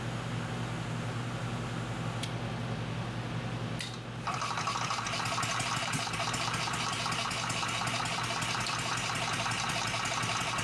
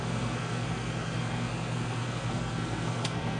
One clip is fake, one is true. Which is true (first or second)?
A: first